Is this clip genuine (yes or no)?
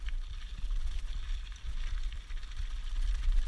yes